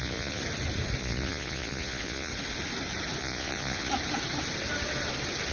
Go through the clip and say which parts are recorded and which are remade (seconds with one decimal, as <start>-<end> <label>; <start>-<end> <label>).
0.0-0.4 remade; 0.4-1.0 recorded; 1.0-2.3 remade; 2.3-3.2 recorded; 3.2-3.9 remade; 3.9-5.5 recorded